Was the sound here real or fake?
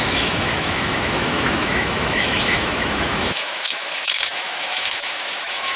fake